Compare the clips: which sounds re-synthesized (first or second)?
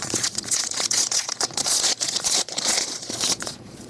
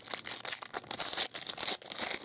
first